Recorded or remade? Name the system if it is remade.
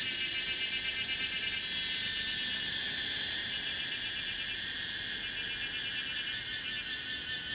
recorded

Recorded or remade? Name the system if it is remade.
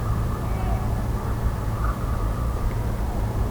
remade, vocoder, BigVGAN v2